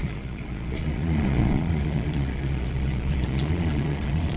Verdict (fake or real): fake